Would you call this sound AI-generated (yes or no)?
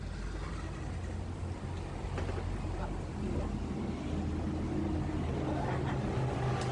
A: no